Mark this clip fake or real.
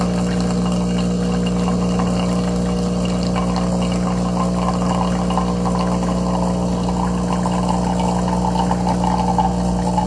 real